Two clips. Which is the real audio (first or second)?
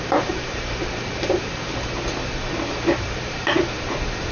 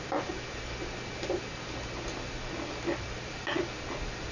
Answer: second